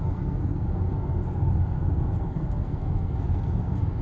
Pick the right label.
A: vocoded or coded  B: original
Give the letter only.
A